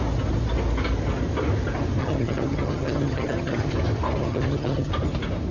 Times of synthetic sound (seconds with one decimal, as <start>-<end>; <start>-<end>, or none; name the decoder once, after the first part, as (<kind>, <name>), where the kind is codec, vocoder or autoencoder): 2.0-3.7 (vocoder, HiFi-GAN); 4.2-4.9